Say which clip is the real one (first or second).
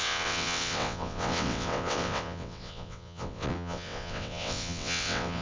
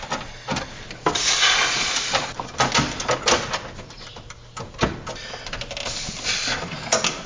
second